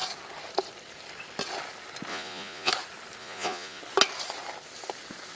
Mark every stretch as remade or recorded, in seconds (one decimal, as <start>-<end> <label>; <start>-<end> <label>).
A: 0.0-2.1 recorded; 2.1-2.7 remade; 2.7-3.2 recorded; 3.2-3.8 remade; 3.8-5.4 recorded

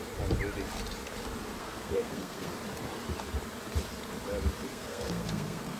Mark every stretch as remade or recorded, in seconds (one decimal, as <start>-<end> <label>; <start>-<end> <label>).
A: 0.0-1.6 recorded; 1.6-2.5 remade; 2.5-4.7 recorded; 4.7-5.8 remade

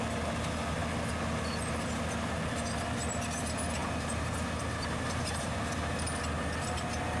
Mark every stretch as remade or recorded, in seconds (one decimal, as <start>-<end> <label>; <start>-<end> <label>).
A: 0.0-3.8 recorded; 3.8-5.6 remade; 5.6-7.2 recorded

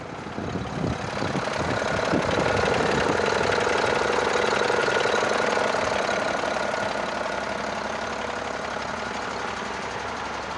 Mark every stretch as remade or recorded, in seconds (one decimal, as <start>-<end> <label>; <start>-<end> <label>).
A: 0.0-10.6 recorded

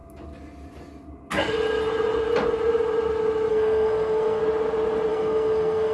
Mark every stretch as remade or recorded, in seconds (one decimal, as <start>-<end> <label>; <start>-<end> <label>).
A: 0.0-3.5 recorded; 3.5-4.4 remade; 4.4-5.1 recorded; 5.1-5.9 remade

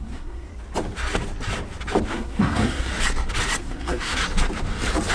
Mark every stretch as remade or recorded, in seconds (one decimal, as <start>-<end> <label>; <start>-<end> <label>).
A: 0.0-0.5 remade; 0.5-2.1 recorded; 2.1-2.9 remade; 2.9-3.6 recorded; 3.6-4.2 remade; 4.2-5.1 recorded

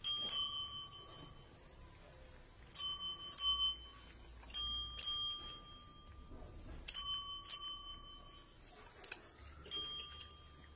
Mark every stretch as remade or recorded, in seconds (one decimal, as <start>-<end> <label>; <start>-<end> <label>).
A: 0.0-10.8 recorded